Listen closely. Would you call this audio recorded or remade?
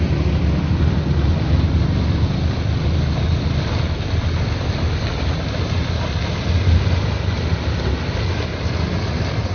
recorded